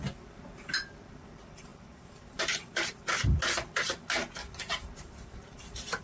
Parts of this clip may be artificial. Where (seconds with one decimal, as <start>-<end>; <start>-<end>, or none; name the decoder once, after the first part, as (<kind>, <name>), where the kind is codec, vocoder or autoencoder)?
1.7-3.0 (vocoder, BigVGAN v2); 4.2-6.0